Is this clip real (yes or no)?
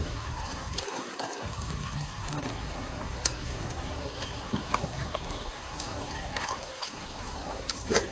no